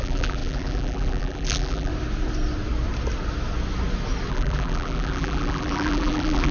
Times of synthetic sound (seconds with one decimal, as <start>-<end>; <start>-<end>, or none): 0.0-1.9; 4.3-6.5